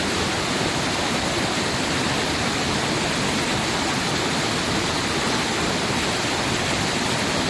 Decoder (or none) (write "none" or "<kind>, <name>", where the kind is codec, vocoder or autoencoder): none